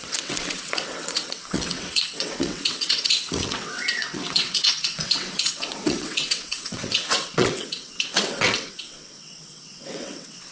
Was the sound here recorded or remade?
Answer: remade